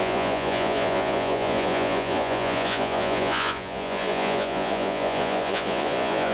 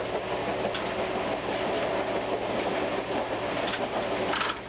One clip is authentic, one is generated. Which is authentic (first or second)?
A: second